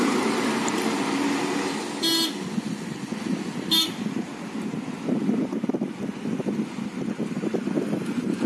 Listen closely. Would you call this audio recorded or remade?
recorded